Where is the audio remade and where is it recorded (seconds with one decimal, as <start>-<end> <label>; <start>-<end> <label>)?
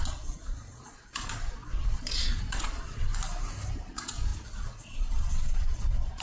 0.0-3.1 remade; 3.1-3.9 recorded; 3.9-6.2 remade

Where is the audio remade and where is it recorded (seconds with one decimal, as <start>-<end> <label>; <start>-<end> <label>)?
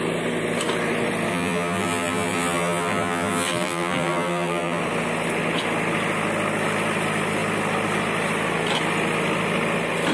0.0-1.3 recorded; 1.3-4.8 remade; 4.8-10.1 recorded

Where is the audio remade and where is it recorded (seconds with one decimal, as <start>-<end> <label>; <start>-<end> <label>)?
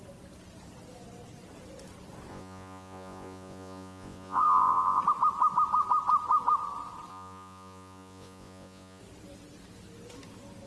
0.0-2.3 recorded; 2.3-5.0 remade; 5.0-7.1 recorded; 7.1-9.0 remade; 9.0-10.7 recorded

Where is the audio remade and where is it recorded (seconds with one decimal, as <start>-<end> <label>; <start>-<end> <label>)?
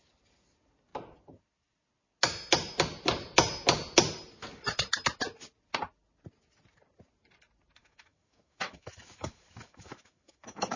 0.0-7.8 recorded; 7.8-10.8 remade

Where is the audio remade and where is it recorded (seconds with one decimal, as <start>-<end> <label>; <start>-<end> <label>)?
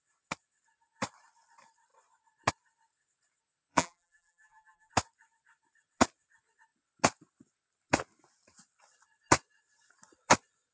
0.0-3.7 recorded; 3.7-4.9 remade; 4.9-10.7 recorded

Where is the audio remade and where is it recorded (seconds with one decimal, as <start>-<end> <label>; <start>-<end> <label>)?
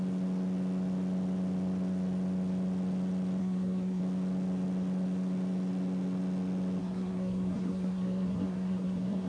0.0-3.4 recorded; 3.4-4.0 remade; 4.0-6.8 recorded; 6.8-9.3 remade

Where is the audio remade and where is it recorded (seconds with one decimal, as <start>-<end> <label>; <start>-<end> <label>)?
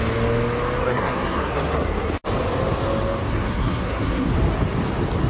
0.0-0.8 recorded; 0.8-2.1 remade; 2.1-3.3 recorded; 3.3-4.3 remade; 4.3-5.3 recorded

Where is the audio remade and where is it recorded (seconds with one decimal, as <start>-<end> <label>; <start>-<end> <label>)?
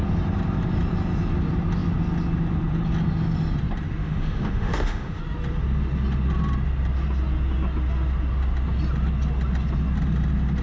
0.0-4.0 recorded; 4.0-5.2 remade; 5.2-10.6 recorded